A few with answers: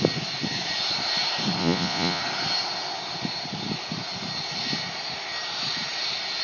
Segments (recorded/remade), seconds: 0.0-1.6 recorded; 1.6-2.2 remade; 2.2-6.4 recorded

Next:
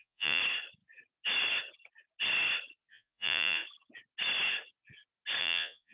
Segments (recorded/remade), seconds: 0.0-0.4 remade; 0.4-2.9 recorded; 2.9-3.6 remade; 3.6-5.4 recorded; 5.4-5.9 remade

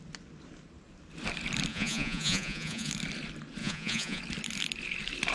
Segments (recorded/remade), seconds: 0.0-1.7 recorded; 1.7-2.9 remade; 2.9-3.6 recorded; 3.6-4.2 remade; 4.2-5.3 recorded

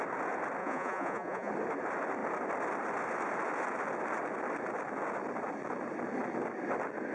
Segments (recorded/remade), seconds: 0.0-0.6 recorded; 0.6-1.5 remade; 1.5-7.1 recorded

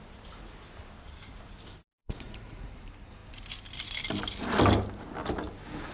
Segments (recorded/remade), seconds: 0.0-2.0 recorded; 2.0-2.7 remade; 2.7-5.9 recorded

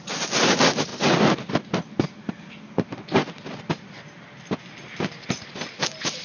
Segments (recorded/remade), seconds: 0.0-6.2 recorded